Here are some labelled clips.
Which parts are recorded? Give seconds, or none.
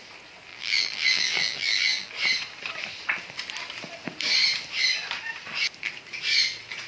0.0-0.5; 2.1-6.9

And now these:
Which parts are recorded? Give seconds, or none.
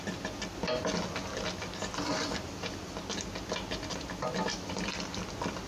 0.0-4.5; 5.3-5.7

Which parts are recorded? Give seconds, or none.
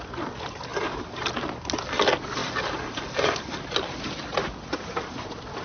0.0-0.7; 1.3-2.4; 3.6-5.6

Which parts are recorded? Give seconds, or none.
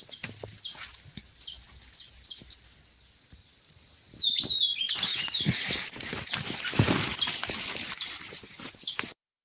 1.5-2.6; 5.1-6.1